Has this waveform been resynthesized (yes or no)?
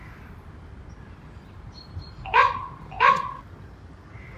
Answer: no